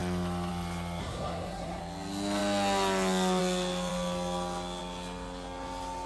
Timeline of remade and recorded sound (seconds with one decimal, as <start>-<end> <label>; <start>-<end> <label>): 0.0-1.0 recorded; 1.0-1.8 remade; 1.8-6.1 recorded